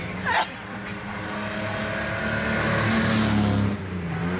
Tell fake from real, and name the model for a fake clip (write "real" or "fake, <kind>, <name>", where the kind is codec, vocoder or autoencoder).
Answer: real